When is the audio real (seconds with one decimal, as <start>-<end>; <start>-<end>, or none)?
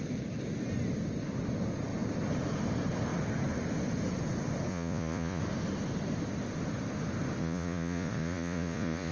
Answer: 0.0-4.7; 5.4-7.4